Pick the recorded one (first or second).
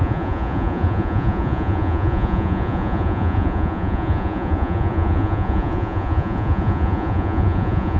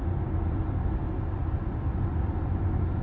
second